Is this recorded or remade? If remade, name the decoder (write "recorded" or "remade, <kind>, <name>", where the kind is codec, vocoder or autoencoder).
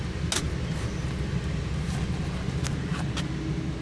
recorded